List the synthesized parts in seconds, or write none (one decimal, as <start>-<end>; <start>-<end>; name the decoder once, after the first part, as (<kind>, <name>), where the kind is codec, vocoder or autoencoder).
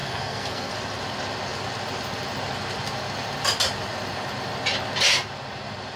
0.0-0.7 (codec, SNAC)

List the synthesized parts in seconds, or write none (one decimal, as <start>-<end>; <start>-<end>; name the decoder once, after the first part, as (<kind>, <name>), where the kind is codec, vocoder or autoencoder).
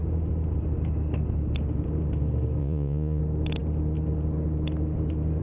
2.6-3.2 (vocoder, Vocos)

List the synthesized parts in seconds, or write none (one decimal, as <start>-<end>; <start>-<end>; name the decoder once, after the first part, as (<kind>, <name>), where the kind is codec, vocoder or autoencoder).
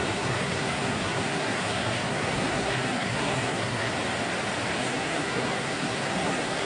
0.0-3.9 (codec, SNAC); 4.8-6.7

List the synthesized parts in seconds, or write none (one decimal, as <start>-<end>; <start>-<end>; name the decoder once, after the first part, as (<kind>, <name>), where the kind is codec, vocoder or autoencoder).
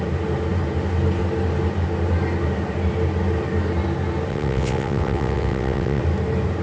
4.3-6.0 (vocoder, WaveNeXt)